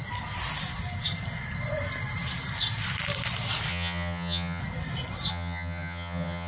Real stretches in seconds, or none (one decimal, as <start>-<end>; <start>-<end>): 0.0-3.7; 4.6-5.3